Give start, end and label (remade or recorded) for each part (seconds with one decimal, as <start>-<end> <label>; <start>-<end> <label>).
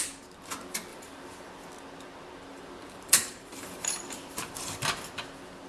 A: 0.0-0.9 recorded; 0.9-1.7 remade; 1.7-2.5 recorded; 2.5-4.7 remade; 4.7-5.7 recorded